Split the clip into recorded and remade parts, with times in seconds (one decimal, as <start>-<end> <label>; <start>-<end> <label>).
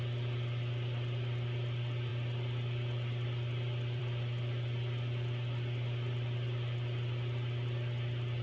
0.0-8.4 recorded